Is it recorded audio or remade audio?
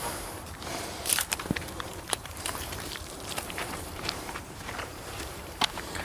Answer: remade